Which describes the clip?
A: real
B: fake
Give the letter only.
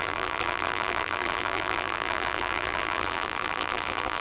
B